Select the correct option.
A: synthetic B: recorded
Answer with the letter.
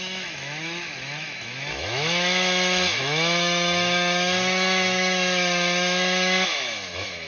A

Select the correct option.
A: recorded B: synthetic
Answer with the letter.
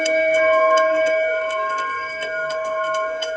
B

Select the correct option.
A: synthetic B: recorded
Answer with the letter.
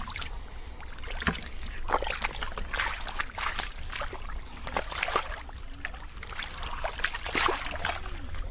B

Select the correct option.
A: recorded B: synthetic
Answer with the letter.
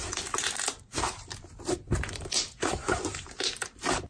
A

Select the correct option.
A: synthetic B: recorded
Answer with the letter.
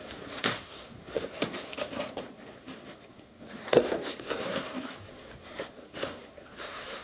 A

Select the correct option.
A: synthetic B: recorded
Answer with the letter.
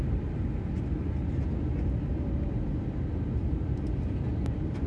B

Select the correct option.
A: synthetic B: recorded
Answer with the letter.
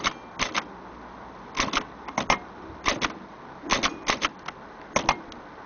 B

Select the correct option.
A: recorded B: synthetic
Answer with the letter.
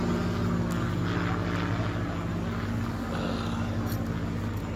A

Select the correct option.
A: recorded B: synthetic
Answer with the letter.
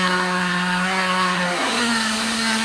B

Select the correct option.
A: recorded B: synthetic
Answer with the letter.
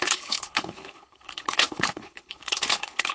B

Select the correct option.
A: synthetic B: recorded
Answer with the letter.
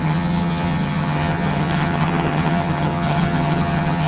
A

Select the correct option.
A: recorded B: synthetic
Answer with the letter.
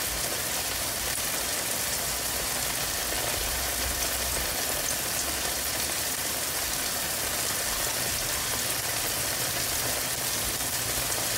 A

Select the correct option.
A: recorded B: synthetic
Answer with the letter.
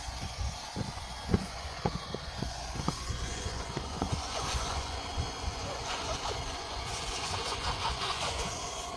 B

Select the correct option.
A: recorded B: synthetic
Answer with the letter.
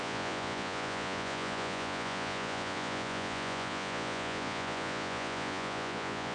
B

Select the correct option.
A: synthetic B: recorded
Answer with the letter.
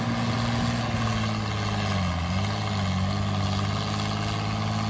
B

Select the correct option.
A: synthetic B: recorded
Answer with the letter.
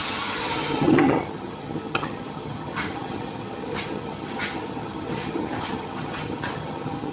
A